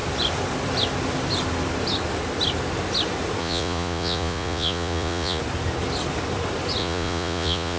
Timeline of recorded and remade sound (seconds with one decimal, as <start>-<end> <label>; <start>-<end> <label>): 0.0-3.4 recorded; 3.4-5.4 remade; 5.4-6.8 recorded; 6.8-7.8 remade